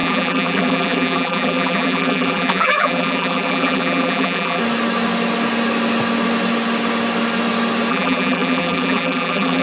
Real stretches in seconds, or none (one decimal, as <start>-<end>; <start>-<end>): 4.6-7.9